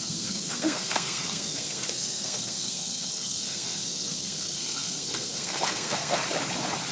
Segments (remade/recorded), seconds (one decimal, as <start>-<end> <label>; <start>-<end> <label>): 0.0-6.2 remade; 6.2-6.9 recorded